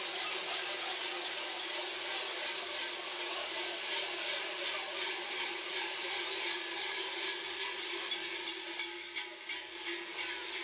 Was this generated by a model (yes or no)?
no